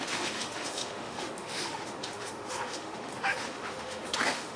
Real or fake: fake